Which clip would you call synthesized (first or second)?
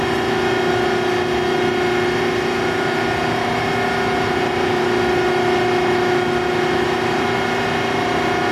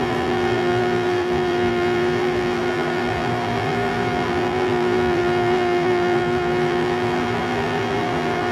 second